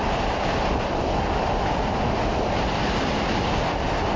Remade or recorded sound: recorded